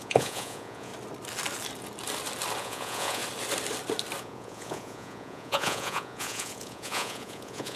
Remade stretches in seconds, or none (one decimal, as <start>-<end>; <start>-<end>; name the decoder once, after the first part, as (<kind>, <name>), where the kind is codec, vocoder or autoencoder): 0.0-0.9 (vocoder, Vocos); 2.6-3.2; 4.2-7.8